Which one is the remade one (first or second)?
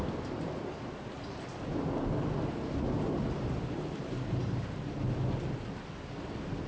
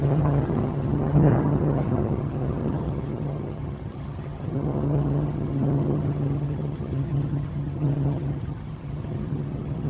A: second